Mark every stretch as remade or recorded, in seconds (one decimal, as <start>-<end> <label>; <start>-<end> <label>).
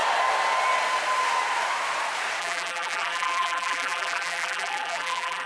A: 0.0-2.4 recorded; 2.4-5.5 remade